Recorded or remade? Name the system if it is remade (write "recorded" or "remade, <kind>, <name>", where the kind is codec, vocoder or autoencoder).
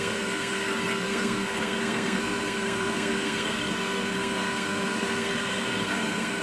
remade, codec, SNAC